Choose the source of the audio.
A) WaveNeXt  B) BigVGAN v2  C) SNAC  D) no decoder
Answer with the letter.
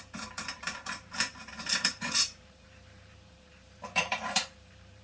B